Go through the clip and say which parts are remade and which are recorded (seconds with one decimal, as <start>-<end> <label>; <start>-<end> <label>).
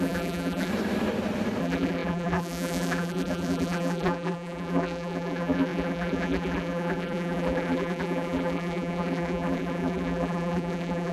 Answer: 0.0-0.7 remade; 0.7-1.6 recorded; 1.6-11.1 remade